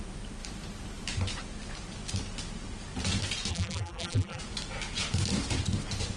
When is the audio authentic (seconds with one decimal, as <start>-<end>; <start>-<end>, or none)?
0.0-3.5; 4.4-6.2